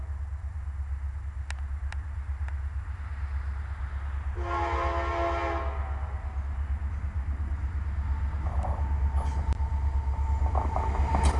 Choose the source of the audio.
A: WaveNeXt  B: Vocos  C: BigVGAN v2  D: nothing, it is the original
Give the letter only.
D